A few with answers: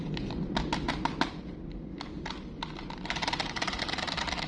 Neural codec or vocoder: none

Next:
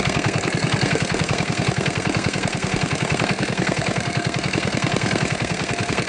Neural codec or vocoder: codec, SNAC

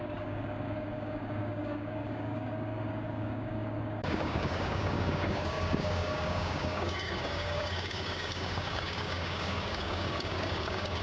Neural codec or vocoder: codec, DAC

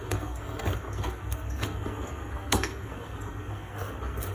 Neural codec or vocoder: codec, SNAC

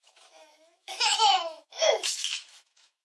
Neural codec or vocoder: autoencoder, DAC-VAE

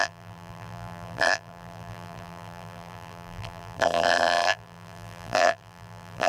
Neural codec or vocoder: vocoder, BigVGAN v2